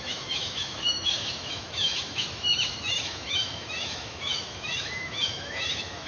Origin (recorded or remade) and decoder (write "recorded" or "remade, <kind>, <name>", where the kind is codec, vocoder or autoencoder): remade, autoencoder, DAC-VAE